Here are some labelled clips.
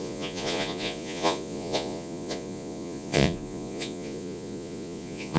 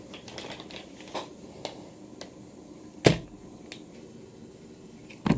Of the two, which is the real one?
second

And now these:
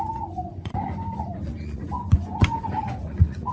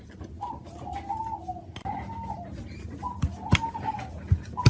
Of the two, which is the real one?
second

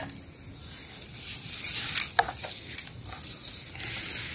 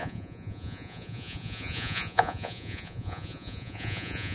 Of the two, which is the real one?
first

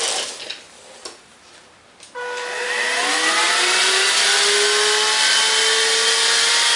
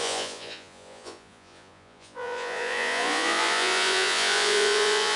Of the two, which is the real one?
first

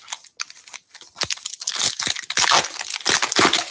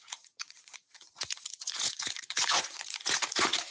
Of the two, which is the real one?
first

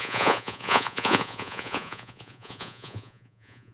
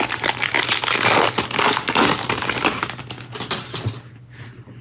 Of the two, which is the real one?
second